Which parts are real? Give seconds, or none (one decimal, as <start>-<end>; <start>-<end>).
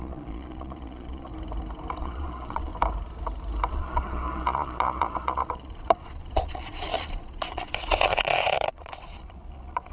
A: 1.3-2.0; 2.7-3.7